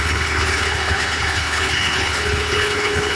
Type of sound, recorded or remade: remade